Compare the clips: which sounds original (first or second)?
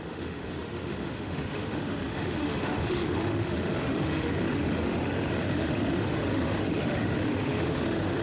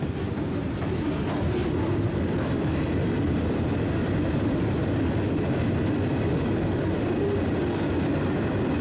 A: second